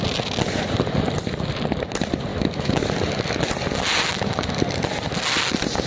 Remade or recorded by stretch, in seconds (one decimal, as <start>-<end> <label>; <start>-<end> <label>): 0.0-2.3 recorded; 2.3-2.9 remade; 2.9-5.9 recorded